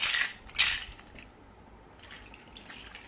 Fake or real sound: real